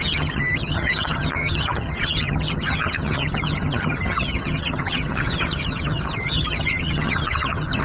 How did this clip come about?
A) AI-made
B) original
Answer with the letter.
A